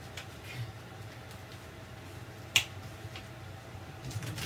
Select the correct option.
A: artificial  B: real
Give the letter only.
B